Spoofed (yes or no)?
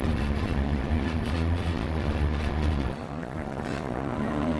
yes